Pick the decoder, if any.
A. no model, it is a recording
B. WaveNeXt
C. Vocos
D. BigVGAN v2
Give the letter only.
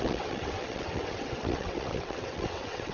B